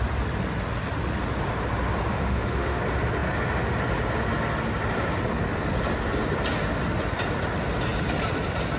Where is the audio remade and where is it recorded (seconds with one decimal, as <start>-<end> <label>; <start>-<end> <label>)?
0.0-2.1 recorded; 2.1-2.8 remade; 2.8-8.8 recorded